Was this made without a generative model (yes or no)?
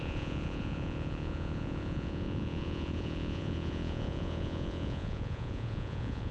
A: no